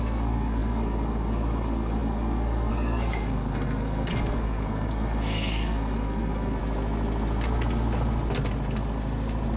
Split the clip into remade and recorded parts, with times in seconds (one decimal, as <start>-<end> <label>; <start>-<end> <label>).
0.0-6.6 remade; 6.6-9.6 recorded